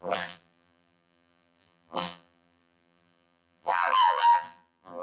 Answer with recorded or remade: remade